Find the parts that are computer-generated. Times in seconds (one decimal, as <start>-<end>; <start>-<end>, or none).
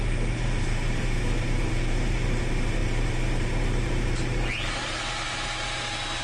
0.0-6.2